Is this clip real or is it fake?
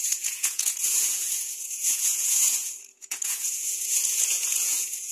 fake